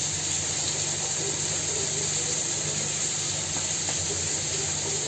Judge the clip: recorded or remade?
recorded